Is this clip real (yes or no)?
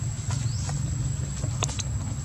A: yes